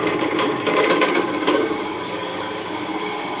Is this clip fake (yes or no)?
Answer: yes